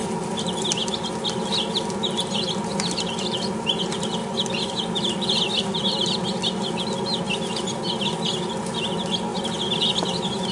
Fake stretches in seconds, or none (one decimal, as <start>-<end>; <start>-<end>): 9.3-10.0